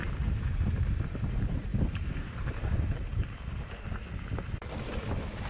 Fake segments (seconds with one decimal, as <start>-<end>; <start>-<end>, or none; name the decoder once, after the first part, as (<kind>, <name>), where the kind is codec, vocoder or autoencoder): 1.7-3.4 (vocoder, BigVGAN v2)